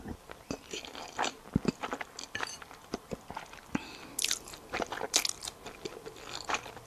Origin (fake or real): real